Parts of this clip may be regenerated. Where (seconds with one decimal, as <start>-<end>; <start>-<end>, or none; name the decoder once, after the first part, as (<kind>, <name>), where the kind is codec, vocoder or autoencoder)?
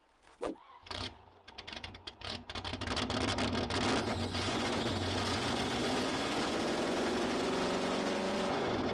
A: 0.0-2.7 (vocoder, Vocos); 4.0-8.9